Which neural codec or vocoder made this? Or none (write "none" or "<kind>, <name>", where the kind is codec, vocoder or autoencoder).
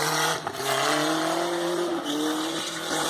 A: vocoder, BigVGAN v2